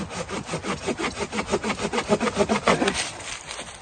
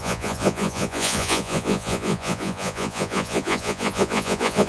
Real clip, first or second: first